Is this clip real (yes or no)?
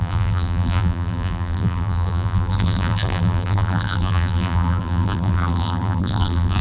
no